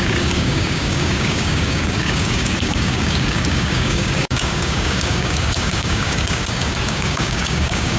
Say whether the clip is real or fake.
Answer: fake